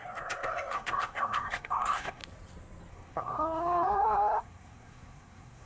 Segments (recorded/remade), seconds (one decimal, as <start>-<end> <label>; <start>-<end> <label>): 0.0-2.2 remade; 2.2-2.9 recorded; 2.9-5.7 remade